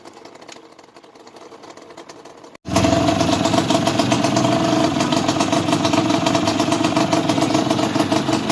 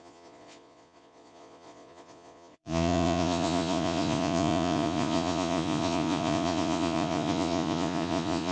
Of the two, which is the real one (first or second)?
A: first